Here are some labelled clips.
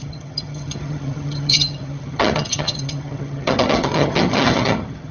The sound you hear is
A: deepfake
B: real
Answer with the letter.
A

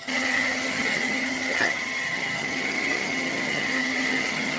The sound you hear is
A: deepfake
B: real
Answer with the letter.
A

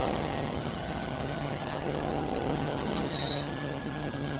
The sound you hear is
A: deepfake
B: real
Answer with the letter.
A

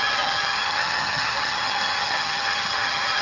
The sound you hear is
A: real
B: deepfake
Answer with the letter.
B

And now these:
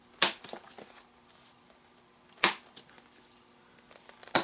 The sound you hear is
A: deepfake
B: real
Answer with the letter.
B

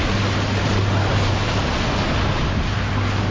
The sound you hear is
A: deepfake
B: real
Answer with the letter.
B